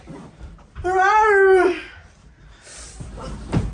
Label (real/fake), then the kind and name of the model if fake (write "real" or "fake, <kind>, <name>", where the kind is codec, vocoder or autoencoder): real